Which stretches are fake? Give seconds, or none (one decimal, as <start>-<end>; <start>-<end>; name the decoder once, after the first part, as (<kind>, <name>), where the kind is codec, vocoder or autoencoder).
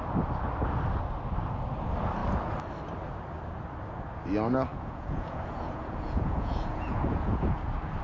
4.7-7.6 (vocoder, Vocos)